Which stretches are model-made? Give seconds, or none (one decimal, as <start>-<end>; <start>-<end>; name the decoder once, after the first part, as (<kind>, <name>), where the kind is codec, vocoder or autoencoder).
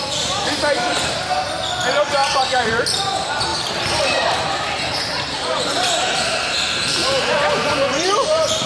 2.2-3.0 (vocoder, BigVGAN v2); 3.5-8.7